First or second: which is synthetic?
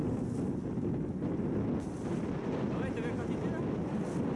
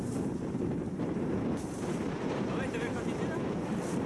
second